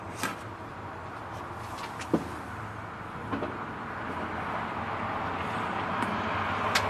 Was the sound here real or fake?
real